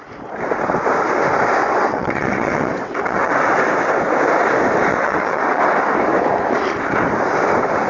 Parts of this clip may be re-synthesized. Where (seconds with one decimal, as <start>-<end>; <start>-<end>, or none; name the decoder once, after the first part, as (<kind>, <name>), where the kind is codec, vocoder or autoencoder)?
1.6-3.3 (vocoder, WaveNeXt); 4.9-5.6